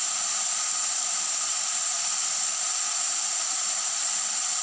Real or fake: fake